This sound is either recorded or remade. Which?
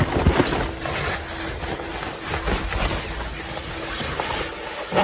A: recorded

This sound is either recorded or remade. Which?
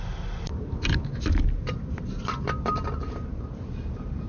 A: recorded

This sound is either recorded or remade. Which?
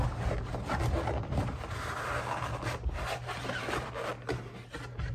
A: recorded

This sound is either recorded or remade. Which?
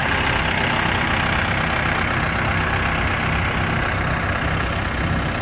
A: recorded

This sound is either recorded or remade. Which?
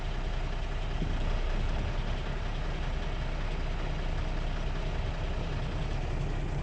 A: recorded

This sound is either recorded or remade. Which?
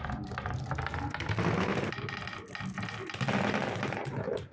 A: recorded